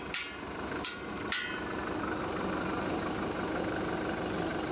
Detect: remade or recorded recorded